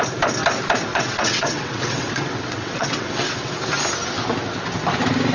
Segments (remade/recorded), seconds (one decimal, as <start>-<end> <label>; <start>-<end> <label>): 0.0-0.9 recorded; 0.9-3.5 remade; 3.5-5.3 recorded